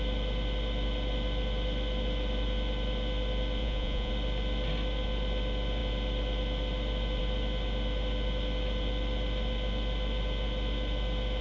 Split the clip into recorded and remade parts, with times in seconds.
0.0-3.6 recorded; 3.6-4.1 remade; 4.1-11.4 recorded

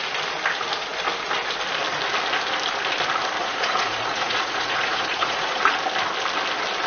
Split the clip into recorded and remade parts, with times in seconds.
0.0-3.4 recorded; 3.4-5.6 remade; 5.6-6.9 recorded

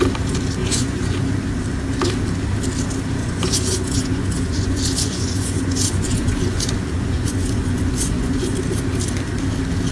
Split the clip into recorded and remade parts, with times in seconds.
0.0-0.6 recorded; 0.6-1.2 remade; 1.2-3.2 recorded; 3.2-8.5 remade; 8.5-9.9 recorded

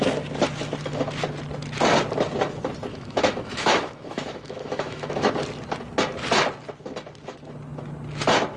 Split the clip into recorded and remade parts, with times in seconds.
0.0-2.9 recorded; 2.9-5.3 remade; 5.3-8.6 recorded

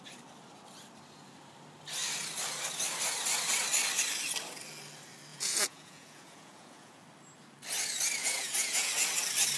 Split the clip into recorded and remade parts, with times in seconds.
0.0-5.3 recorded; 5.3-7.0 remade; 7.0-8.2 recorded; 8.2-8.9 remade; 8.9-9.6 recorded